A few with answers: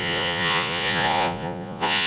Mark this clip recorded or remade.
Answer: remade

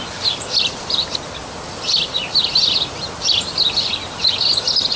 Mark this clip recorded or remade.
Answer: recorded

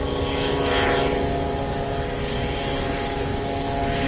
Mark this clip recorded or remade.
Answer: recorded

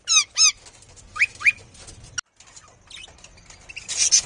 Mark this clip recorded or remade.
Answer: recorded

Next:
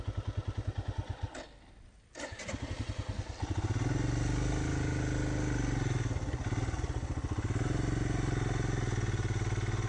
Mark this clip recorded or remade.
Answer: recorded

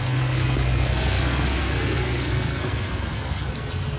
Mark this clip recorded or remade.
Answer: remade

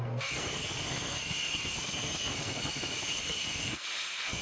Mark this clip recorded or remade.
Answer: remade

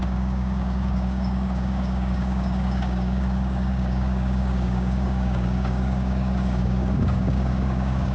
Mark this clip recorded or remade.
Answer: remade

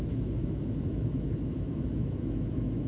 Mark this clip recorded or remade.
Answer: remade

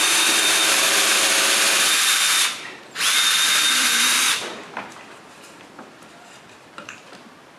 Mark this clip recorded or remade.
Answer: remade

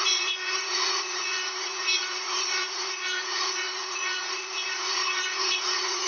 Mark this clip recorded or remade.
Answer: remade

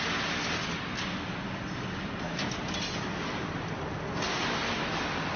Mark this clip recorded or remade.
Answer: recorded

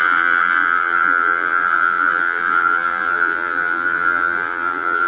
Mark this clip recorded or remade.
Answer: remade